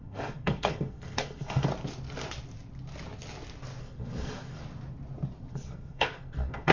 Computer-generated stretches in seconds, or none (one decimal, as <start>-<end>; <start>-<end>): 0.0-1.7; 3.8-4.6; 5.5-6.7